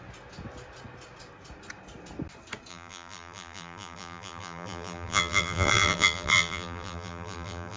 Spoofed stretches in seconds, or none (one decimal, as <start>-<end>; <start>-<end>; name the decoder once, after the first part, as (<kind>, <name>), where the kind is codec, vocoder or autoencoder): 2.7-7.8 (vocoder, BigVGAN v2)